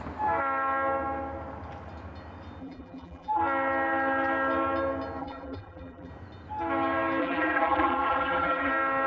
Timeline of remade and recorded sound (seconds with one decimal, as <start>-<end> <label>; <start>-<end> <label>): 0.0-2.6 recorded; 2.6-3.4 remade; 3.4-5.2 recorded; 5.2-6.1 remade; 6.1-7.2 recorded; 7.2-8.7 remade; 8.7-9.1 recorded